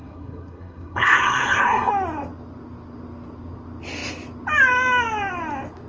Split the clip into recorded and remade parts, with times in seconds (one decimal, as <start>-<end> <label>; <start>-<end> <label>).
0.0-1.9 remade; 1.9-5.9 recorded